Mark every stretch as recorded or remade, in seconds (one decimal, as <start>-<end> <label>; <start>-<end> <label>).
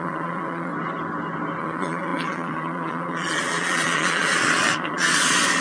0.0-0.7 remade; 0.7-1.6 recorded; 1.6-5.6 remade